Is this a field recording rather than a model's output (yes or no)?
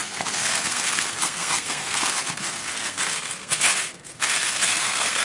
no